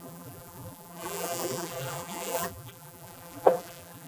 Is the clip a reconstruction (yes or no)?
yes